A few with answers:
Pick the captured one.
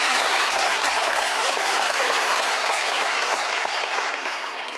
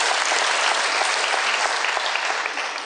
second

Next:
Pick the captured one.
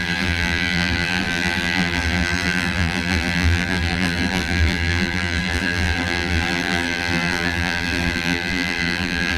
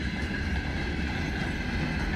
second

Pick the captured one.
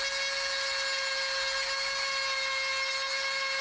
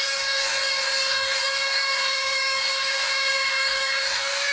first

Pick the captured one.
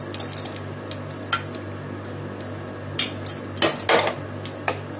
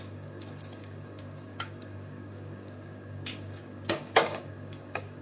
first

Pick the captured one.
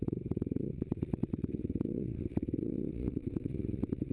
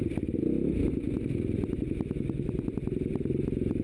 second